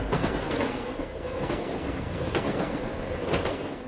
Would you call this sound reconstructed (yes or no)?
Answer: yes